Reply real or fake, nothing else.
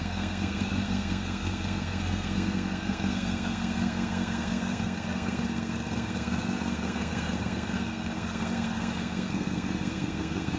fake